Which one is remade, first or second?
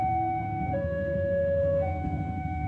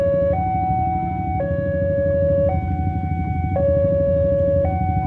first